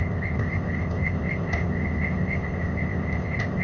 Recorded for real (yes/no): no